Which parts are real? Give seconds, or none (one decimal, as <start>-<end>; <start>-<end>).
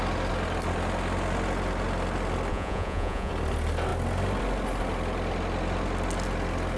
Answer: 0.0-2.5; 3.3-6.8